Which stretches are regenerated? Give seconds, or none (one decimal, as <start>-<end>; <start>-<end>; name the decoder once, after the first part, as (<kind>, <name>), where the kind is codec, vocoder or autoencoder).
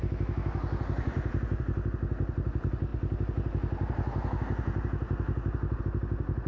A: none